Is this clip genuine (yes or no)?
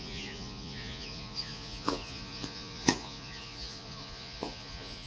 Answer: no